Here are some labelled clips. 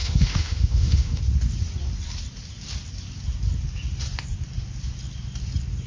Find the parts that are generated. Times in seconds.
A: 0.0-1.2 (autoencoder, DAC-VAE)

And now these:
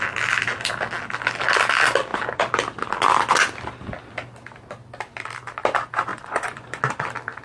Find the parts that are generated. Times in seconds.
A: 6.1-6.8 (vocoder, Vocos)

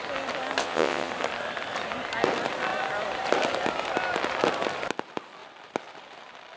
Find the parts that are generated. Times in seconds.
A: 0.6-1.1 (vocoder, WaveNeXt)

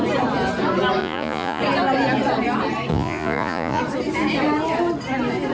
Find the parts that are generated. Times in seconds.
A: 1.0-1.6 (vocoder, Vocos); 2.9-3.8

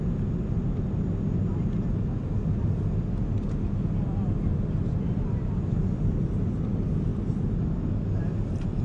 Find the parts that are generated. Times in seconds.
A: 4.5-6.4 (vocoder, BigVGAN v2)